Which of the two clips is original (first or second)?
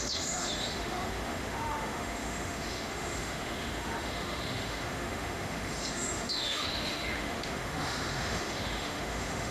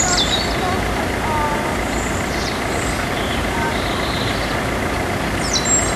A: second